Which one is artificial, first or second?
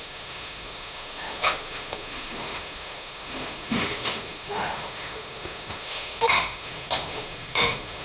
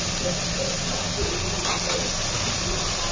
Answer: first